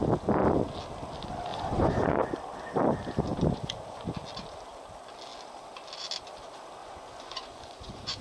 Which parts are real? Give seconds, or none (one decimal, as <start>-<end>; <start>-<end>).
0.0-1.5; 2.2-6.8